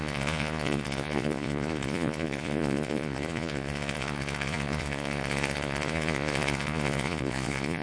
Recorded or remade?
remade